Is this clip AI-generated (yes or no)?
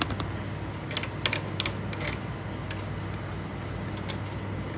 no